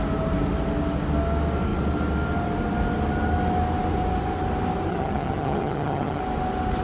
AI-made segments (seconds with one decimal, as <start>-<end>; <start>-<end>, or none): 4.9-6.2

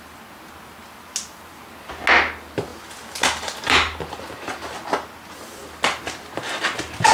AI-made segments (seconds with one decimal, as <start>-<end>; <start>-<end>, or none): none

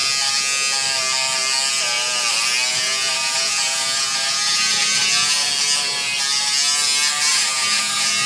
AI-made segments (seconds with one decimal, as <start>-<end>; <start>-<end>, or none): 2.7-5.5; 7.3-8.3

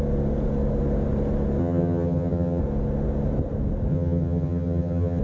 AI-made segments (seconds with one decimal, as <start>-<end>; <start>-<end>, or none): 1.6-2.6; 3.9-5.2

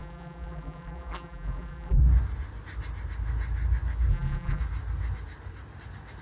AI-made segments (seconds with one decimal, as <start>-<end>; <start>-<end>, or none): 0.0-2.0; 4.1-4.6

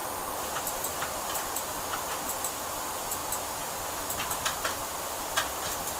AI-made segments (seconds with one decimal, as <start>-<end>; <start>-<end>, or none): none

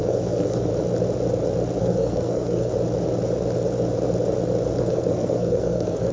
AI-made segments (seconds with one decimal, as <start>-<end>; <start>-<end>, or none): 0.0-0.7; 1.8-2.7; 4.8-6.1

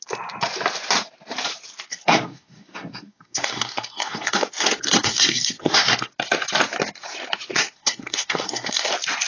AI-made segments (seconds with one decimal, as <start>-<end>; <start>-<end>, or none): 1.9-6.1; 7.6-8.9